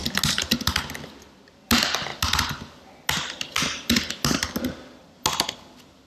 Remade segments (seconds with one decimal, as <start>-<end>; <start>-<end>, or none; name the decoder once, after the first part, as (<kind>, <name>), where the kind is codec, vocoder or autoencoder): none